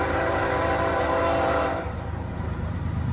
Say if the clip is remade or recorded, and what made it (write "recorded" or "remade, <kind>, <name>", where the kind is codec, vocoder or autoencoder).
remade, vocoder, BigVGAN v2